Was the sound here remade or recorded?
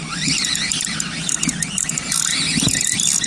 recorded